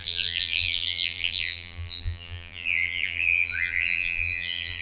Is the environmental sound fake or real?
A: fake